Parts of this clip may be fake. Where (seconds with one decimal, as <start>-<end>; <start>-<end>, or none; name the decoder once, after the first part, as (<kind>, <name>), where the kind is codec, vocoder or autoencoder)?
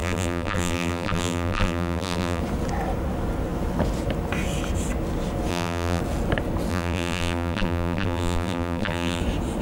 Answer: 0.0-2.4 (vocoder, BigVGAN v2); 5.5-6.0; 6.7-9.2